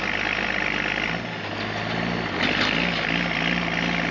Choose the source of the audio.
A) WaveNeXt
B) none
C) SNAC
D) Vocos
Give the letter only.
B